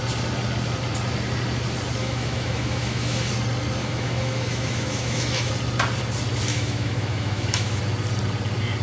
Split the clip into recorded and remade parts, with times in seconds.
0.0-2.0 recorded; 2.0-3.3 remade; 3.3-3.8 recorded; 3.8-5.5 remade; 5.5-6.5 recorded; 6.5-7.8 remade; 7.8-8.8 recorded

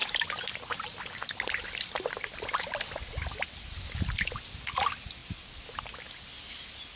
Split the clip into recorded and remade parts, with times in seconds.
0.0-7.0 recorded

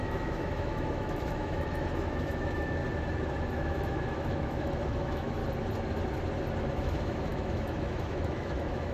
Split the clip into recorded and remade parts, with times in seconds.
0.0-2.8 remade; 2.8-3.5 recorded; 3.5-5.4 remade; 5.4-6.6 recorded; 6.6-8.9 remade

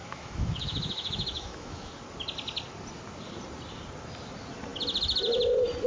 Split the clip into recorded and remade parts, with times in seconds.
0.0-1.9 remade; 1.9-5.9 recorded

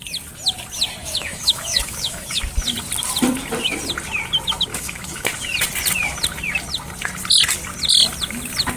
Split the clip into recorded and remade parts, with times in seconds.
0.0-1.0 recorded; 1.0-2.4 remade; 2.4-4.7 recorded; 4.7-5.3 remade; 5.3-8.8 recorded

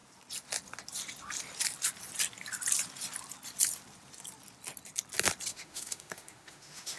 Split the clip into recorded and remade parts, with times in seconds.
0.0-5.5 recorded; 5.5-7.0 remade

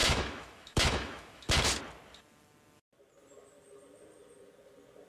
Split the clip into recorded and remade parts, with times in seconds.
0.0-1.5 remade; 1.5-5.1 recorded

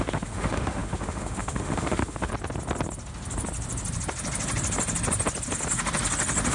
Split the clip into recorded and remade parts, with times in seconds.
0.0-2.3 remade; 2.3-6.5 recorded